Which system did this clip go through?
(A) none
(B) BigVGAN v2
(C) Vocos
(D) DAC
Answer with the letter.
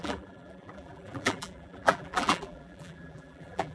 B